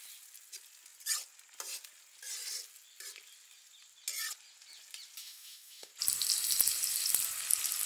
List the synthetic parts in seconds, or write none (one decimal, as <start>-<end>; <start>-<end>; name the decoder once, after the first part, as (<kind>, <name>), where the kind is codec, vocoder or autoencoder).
5.2-5.9 (autoencoder, DAC-VAE)